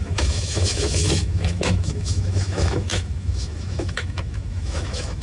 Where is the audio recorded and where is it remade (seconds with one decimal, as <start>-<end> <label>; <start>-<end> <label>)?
0.0-5.2 remade